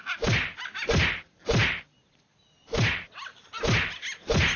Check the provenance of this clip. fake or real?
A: real